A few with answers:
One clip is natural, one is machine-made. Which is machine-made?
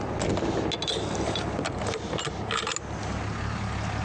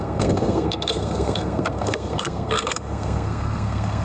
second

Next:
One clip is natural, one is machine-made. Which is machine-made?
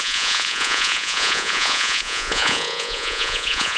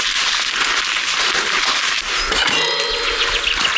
first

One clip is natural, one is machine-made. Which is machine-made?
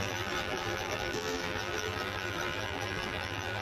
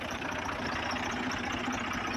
first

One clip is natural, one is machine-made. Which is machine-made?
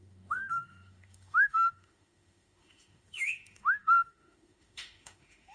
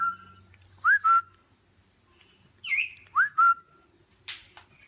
first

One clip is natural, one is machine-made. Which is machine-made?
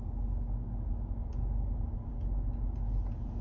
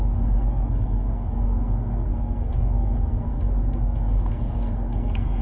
second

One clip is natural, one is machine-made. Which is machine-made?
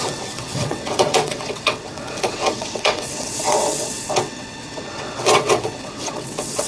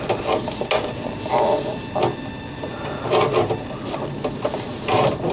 first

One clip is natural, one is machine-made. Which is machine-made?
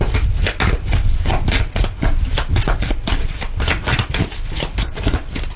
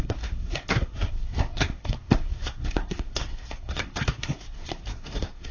second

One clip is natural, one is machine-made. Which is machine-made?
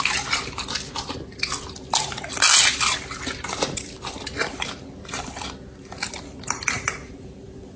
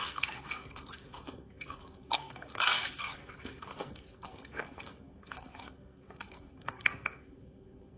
second